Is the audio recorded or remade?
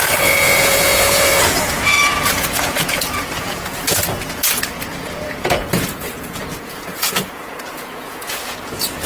remade